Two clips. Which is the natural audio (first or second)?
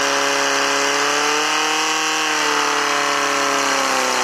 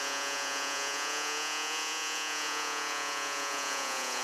first